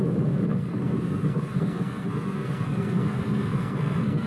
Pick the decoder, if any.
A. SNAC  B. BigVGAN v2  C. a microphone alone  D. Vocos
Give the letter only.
A